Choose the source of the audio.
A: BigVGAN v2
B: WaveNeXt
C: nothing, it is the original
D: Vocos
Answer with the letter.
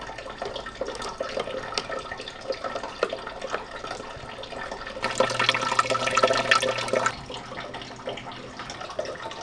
C